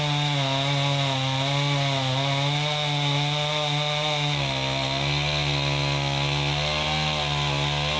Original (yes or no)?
yes